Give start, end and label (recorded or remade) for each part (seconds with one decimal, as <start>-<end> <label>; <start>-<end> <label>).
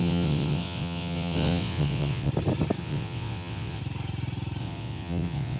0.0-2.3 remade; 2.3-2.8 recorded; 2.8-3.8 remade; 3.8-4.6 recorded; 4.6-5.6 remade